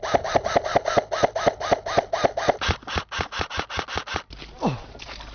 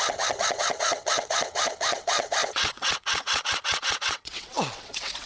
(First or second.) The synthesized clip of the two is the second